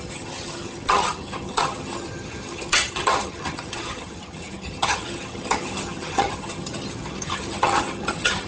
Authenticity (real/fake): fake